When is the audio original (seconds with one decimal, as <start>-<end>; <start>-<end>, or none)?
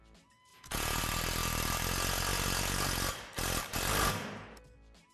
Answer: 0.0-0.5; 1.0-5.1